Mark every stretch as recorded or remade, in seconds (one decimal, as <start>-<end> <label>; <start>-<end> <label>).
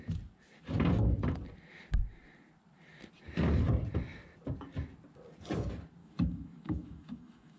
0.0-6.0 recorded; 6.0-7.6 remade